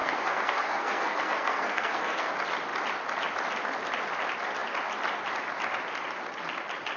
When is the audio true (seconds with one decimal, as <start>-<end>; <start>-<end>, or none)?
2.3-7.0